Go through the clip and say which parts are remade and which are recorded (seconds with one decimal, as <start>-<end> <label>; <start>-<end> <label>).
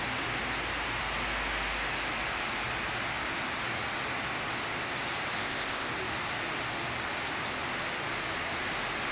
0.0-5.4 recorded; 5.4-5.9 remade; 5.9-9.1 recorded